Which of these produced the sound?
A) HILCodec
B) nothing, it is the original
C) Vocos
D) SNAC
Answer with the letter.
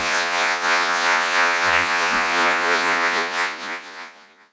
C